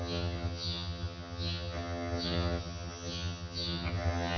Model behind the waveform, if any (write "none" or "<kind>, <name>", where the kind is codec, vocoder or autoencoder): vocoder, HiFi-GAN